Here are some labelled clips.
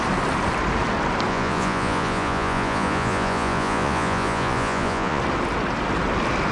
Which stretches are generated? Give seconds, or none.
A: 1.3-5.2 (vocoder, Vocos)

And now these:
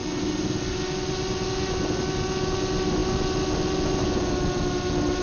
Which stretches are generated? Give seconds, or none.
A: none

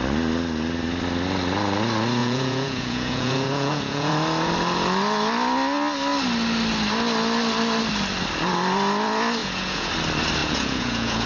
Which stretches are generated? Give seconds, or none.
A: 2.2-4.1 (vocoder, Vocos); 9.4-9.9; 10.4-11.3

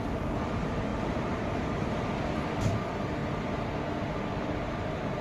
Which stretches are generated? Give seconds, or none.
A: 0.0-5.2 (vocoder, BigVGAN v2)

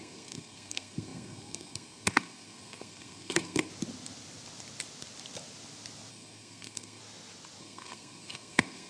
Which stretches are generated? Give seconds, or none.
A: 0.0-3.7 (codec, SNAC); 6.1-7.0; 7.6-8.9

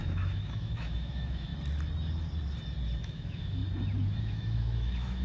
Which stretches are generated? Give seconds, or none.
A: 0.0-1.5 (autoencoder, DAC-VAE); 3.0-3.6; 4.2-5.2